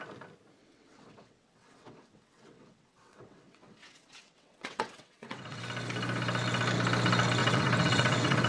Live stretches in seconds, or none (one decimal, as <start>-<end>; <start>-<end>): 0.0-0.6; 5.6-7.4